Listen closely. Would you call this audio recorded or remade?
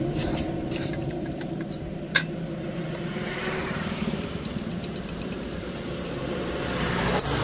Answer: remade